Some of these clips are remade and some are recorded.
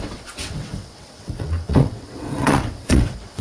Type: remade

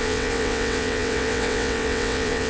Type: remade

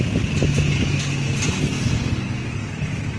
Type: recorded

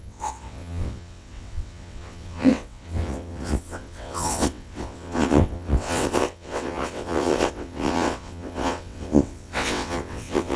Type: remade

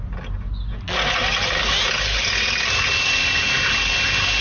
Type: recorded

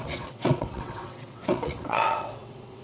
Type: remade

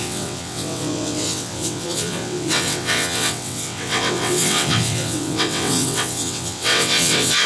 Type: remade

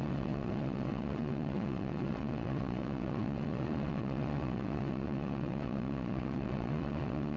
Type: remade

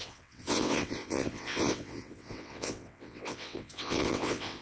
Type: remade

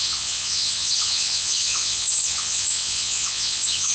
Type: remade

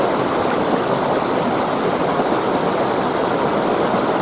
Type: recorded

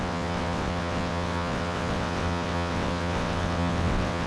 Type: remade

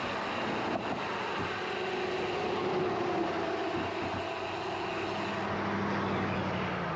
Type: recorded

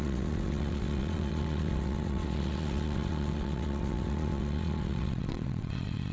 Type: remade